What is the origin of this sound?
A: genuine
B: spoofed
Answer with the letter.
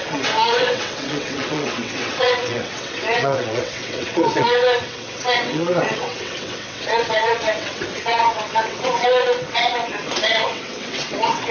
B